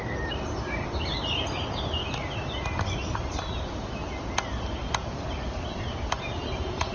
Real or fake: real